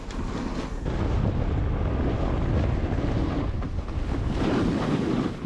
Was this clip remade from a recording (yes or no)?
no